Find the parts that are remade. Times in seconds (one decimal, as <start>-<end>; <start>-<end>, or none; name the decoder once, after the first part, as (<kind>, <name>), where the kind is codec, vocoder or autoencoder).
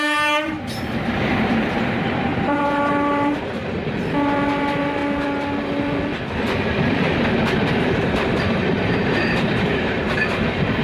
0.0-3.6 (vocoder, BigVGAN v2); 4.6-5.0; 7.7-10.8